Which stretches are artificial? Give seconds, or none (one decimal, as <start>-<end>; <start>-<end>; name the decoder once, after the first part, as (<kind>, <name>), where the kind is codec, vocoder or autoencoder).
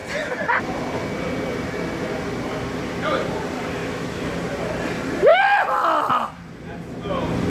3.8-4.3 (autoencoder, DAC-VAE)